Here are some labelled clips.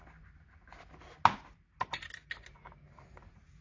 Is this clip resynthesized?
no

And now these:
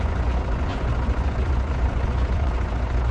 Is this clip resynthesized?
yes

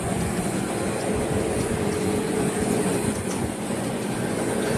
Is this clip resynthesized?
yes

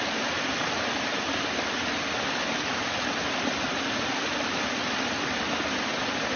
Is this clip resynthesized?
no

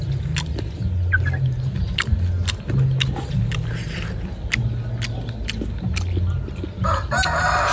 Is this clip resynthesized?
no